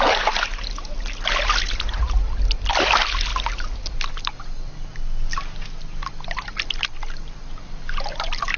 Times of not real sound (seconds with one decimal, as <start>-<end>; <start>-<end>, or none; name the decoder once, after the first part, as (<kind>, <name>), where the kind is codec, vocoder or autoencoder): none